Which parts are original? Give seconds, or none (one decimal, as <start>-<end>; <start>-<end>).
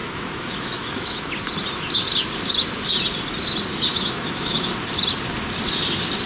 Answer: 1.3-3.9; 4.7-6.3